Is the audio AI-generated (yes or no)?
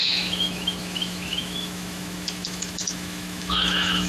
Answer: yes